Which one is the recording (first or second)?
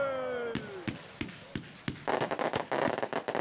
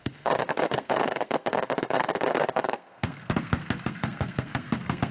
first